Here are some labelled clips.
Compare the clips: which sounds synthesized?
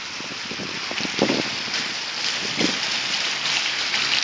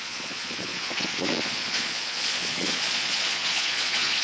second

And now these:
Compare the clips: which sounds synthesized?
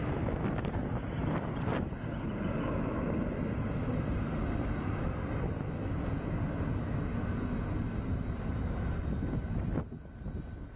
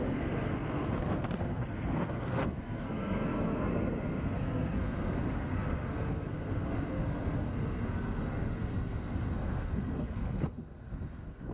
second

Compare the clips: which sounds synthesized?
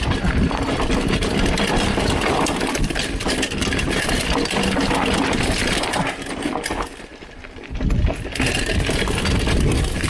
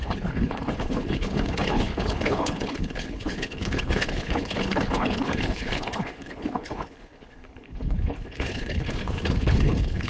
second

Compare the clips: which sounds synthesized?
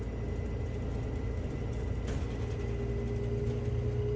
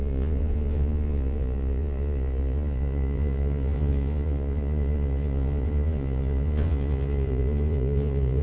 second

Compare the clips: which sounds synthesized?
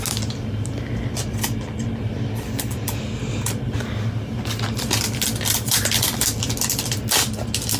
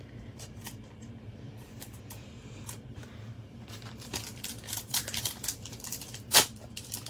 second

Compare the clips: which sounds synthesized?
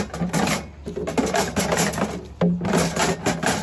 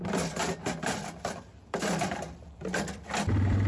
second